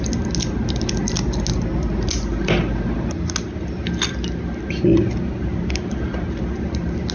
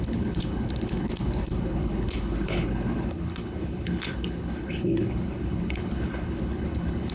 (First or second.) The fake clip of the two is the second